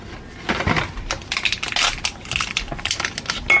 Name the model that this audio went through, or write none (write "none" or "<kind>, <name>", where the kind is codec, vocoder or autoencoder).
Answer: none